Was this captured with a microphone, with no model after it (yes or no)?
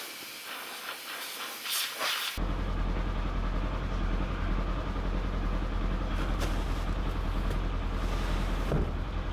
yes